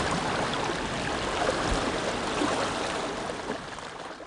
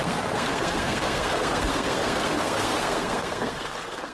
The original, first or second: first